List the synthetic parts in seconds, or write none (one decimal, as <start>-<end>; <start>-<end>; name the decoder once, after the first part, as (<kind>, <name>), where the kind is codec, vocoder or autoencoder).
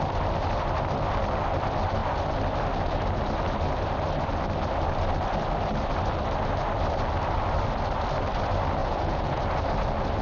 8.8-9.4 (vocoder, Vocos)